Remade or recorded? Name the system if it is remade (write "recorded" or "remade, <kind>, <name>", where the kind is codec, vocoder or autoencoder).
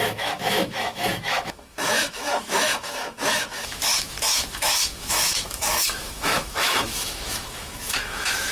remade, autoencoder, DAC-VAE